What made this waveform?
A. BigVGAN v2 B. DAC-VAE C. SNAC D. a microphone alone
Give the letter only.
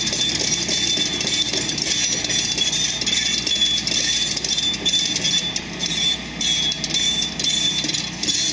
D